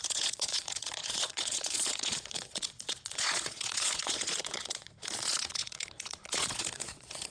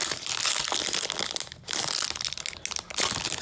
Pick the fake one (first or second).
first